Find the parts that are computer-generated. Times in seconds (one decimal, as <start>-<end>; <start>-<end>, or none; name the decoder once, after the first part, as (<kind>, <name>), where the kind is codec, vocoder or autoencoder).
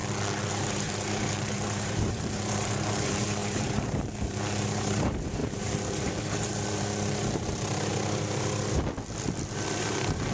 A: 0.5-7.9 (vocoder, BigVGAN v2); 9.8-10.3